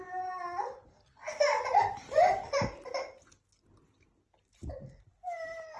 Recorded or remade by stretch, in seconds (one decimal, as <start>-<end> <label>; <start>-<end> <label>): 0.0-1.5 recorded; 1.5-3.2 remade; 3.2-5.8 recorded